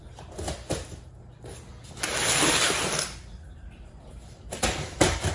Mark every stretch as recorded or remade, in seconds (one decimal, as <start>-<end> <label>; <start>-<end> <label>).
0.0-1.7 recorded; 1.7-5.3 remade